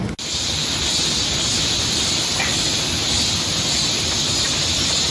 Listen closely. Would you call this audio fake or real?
real